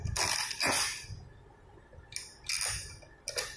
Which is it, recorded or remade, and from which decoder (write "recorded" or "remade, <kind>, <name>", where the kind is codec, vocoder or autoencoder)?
recorded